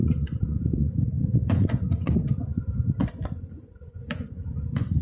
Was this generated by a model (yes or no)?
yes